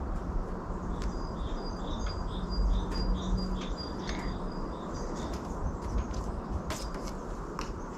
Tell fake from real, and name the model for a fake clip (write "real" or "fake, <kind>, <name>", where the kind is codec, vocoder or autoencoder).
real